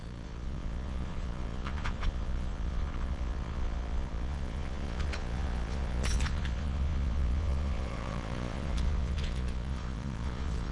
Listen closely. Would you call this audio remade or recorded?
remade